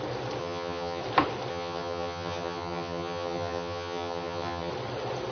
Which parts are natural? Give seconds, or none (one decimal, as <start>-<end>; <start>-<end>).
0.0-0.4; 1.0-1.5; 4.7-5.3